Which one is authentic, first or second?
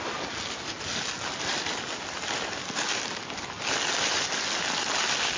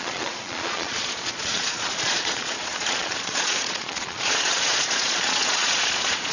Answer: first